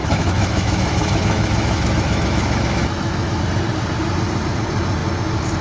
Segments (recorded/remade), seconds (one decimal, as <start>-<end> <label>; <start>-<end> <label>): 0.0-3.4 remade; 3.4-5.6 recorded